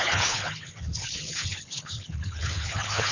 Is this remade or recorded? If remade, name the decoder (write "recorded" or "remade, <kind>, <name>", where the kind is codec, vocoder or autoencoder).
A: remade, codec, HILCodec